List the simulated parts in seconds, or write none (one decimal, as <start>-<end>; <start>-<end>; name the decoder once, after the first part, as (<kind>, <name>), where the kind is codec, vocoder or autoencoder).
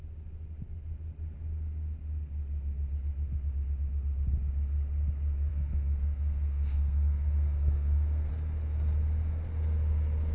5.5-8.3 (codec, SNAC)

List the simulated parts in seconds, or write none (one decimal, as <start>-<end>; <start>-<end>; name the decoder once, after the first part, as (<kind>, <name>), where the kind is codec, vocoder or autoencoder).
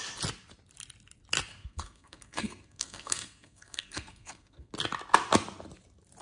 1.5-4.7 (codec, SNAC)